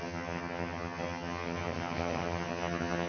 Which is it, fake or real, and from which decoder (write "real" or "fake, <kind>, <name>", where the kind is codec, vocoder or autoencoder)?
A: fake, vocoder, HiFi-GAN